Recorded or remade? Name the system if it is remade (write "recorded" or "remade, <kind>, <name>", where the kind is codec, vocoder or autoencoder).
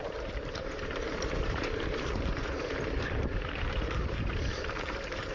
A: remade, vocoder, BigVGAN v2